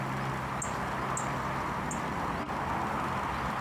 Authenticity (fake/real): real